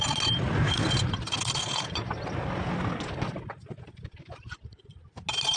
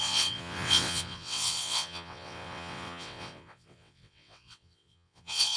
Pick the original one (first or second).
first